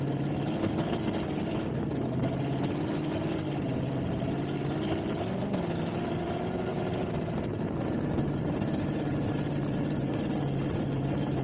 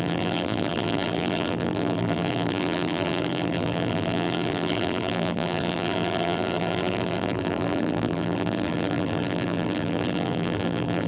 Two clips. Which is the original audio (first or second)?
first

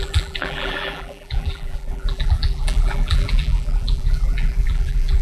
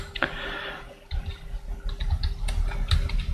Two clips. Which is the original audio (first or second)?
second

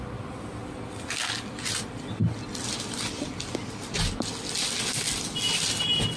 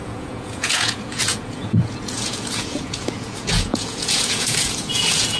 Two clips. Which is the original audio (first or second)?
first